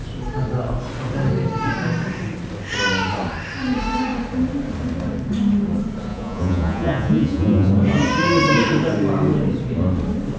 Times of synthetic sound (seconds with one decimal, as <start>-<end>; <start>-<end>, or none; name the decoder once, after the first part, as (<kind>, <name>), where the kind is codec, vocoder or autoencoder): 6.1-7.7 (vocoder, Vocos)